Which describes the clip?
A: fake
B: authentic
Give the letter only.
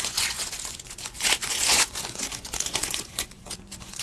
A